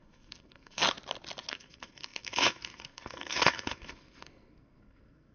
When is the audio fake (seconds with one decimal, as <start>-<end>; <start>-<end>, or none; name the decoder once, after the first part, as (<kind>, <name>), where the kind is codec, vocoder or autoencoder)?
0.0-0.8 (codec, SNAC); 1.5-5.3